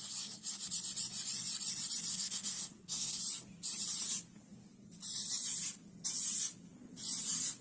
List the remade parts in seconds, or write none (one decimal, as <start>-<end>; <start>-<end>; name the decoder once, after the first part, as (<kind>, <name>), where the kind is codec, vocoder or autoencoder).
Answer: 2.1-3.2 (codec, SNAC)